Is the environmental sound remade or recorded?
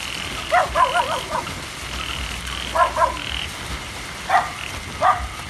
recorded